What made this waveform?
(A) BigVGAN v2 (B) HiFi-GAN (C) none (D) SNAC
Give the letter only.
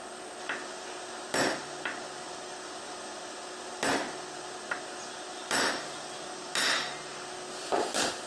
C